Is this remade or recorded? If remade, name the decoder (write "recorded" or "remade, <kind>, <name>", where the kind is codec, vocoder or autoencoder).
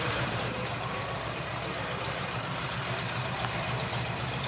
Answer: remade, vocoder, BigVGAN v2